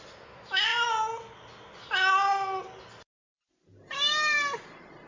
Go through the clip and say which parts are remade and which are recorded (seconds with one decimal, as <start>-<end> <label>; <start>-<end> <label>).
0.0-5.1 recorded